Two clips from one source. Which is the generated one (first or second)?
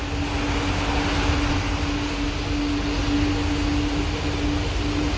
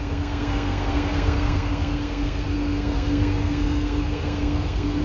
second